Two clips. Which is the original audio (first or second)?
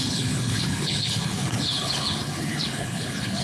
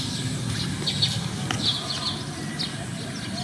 second